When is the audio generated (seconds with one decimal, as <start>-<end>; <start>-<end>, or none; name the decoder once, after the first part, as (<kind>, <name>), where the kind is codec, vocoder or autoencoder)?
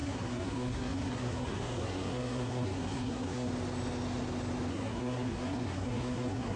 0.0-3.5 (codec, SNAC); 4.7-6.6